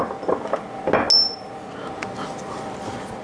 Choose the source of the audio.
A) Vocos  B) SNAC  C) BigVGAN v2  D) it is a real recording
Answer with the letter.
D